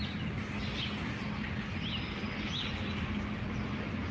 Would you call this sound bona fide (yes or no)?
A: yes